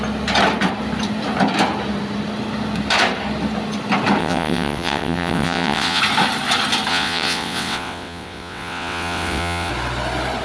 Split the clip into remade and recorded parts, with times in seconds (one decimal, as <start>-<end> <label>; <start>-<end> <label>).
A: 0.0-4.2 recorded; 4.2-6.0 remade; 6.0-6.9 recorded; 6.9-9.7 remade; 9.7-10.4 recorded